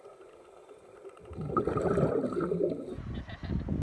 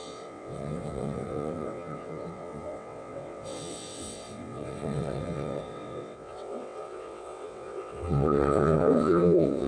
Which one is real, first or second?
first